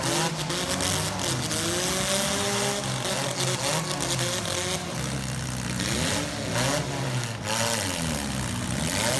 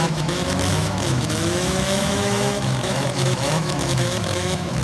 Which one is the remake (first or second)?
second